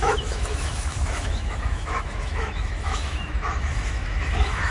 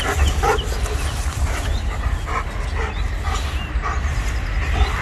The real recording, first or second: second